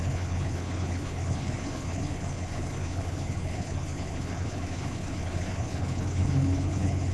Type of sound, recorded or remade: remade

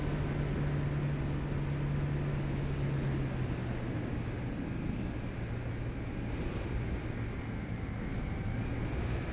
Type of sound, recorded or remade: recorded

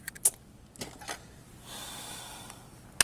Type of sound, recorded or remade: recorded